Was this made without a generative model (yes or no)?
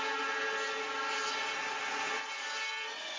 yes